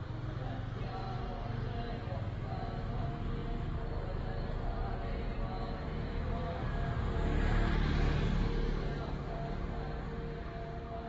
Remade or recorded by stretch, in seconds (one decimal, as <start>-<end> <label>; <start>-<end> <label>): 0.0-11.1 recorded